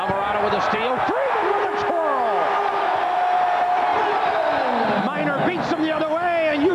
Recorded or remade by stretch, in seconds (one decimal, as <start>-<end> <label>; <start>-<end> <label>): 0.0-6.7 recorded